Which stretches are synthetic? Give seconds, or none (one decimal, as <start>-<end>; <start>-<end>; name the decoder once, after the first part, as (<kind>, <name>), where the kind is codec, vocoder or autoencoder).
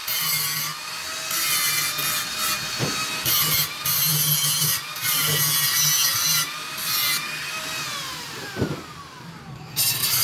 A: none